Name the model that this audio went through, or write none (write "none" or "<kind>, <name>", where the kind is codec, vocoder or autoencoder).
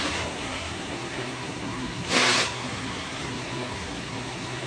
codec, SNAC